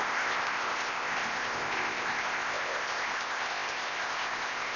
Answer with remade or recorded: remade